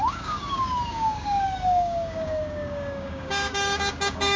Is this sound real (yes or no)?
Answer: no